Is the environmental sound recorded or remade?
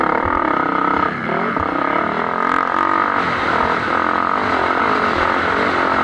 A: recorded